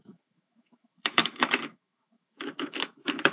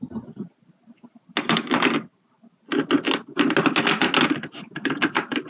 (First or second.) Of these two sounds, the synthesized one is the first